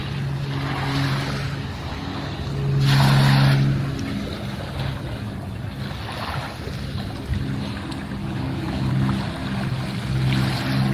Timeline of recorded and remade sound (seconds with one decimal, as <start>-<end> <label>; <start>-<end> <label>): 0.0-8.2 recorded; 8.2-8.9 remade; 8.9-10.9 recorded

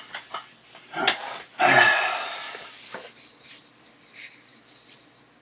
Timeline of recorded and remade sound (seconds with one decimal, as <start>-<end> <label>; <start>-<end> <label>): 0.0-5.4 recorded